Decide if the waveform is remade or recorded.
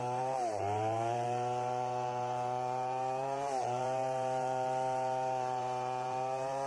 remade